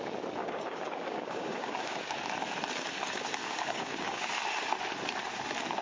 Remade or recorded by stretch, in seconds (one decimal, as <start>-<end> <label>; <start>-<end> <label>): 0.0-0.4 recorded; 0.4-2.2 remade; 2.2-3.4 recorded; 3.4-4.2 remade; 4.2-5.8 recorded